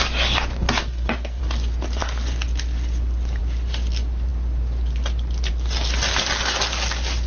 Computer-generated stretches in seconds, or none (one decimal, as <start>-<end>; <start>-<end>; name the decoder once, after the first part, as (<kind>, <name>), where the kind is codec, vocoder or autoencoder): 0.8-1.4 (codec, SNAC)